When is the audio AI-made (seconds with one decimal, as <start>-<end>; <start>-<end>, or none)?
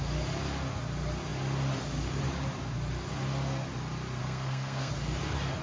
4.2-4.9